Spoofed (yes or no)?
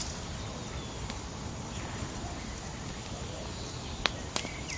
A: no